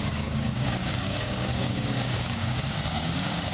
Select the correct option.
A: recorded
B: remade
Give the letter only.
B